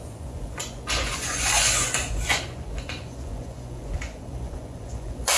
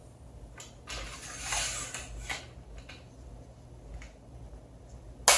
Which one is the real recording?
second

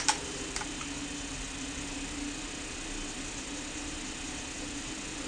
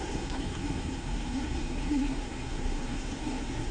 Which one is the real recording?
first